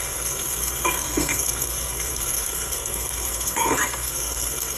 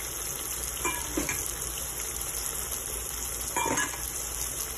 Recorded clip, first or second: second